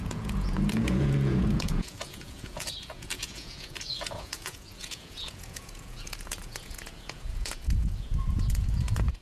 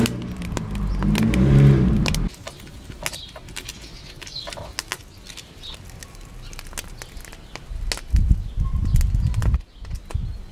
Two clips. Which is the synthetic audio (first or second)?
first